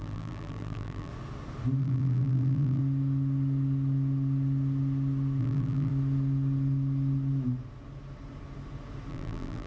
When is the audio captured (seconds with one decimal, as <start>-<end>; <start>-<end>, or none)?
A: 1.1-1.8; 2.8-5.4; 5.9-9.1